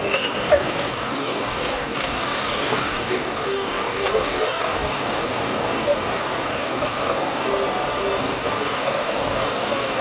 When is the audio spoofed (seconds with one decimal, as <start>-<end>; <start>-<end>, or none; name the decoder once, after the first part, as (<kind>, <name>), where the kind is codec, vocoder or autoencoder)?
0.0-7.5 (codec, DAC); 8.2-10.0